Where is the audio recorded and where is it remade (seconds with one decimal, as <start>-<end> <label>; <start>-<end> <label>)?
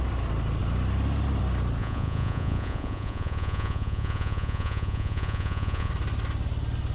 0.0-1.8 recorded; 1.8-5.9 remade; 5.9-6.9 recorded